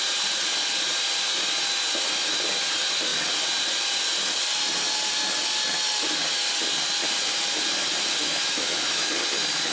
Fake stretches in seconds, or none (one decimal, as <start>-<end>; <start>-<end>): 8.2-9.1